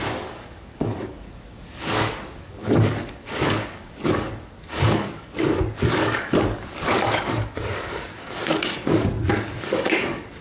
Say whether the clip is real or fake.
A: fake